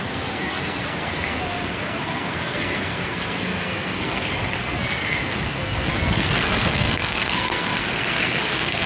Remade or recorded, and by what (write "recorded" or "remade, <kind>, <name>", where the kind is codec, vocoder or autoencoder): remade, codec, SNAC